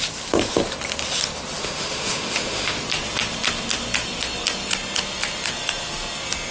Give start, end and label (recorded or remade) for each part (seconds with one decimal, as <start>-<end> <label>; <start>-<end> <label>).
0.0-1.6 recorded; 1.6-2.8 remade; 2.8-6.5 recorded